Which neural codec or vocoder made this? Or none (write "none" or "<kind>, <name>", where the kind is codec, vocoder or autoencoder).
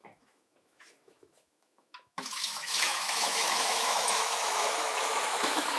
autoencoder, DAC-VAE